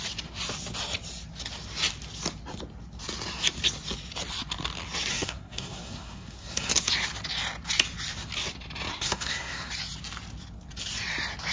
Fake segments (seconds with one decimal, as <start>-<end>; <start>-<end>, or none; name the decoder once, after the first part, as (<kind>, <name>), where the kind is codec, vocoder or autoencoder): 5.1-6.7 (codec, SNAC); 8.9-9.7